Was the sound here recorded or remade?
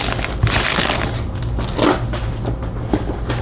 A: recorded